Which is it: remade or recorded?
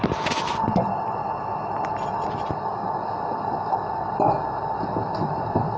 recorded